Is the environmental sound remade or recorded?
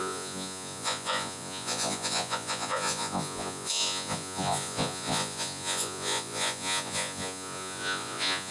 remade